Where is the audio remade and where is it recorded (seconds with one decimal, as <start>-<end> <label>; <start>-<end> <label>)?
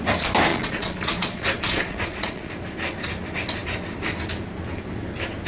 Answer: 0.0-0.5 recorded; 0.5-2.5 remade; 2.5-5.5 recorded